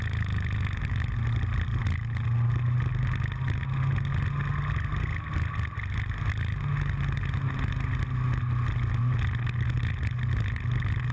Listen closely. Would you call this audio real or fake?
real